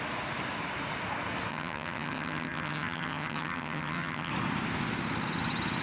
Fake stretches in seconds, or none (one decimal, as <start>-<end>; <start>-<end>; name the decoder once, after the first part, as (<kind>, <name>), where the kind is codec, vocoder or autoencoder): 1.5-4.3 (vocoder, HiFi-GAN)